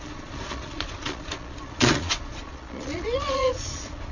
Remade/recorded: remade